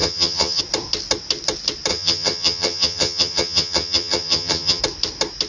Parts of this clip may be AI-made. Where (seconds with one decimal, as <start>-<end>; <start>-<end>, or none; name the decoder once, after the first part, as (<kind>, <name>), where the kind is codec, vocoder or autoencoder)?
0.0-0.6 (vocoder, HiFi-GAN); 1.9-4.8